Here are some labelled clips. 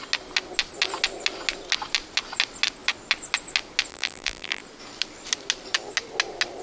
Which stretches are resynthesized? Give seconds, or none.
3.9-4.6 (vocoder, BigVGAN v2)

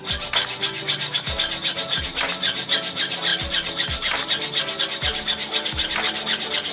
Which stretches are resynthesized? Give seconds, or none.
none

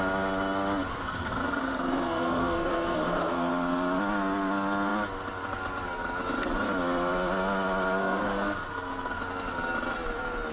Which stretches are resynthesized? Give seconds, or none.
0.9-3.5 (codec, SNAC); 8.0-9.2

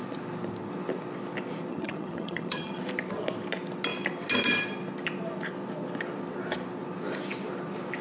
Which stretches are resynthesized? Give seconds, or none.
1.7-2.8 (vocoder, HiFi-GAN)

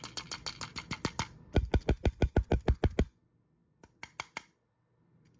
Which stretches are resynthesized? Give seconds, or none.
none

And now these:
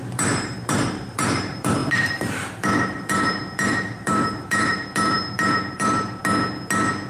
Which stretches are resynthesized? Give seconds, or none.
0.0-6.2 (vocoder, BigVGAN v2)

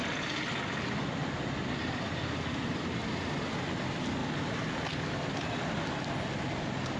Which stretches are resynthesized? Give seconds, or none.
none

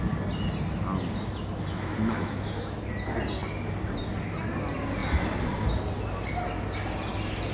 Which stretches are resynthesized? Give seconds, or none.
1.7-2.8 (autoencoder, DAC-VAE)